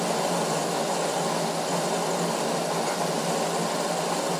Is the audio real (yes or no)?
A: yes